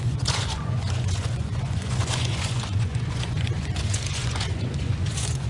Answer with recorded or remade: remade